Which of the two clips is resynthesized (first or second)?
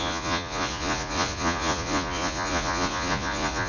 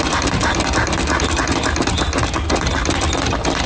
first